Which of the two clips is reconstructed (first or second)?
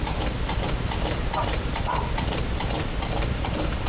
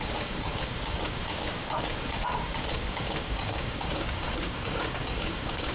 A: second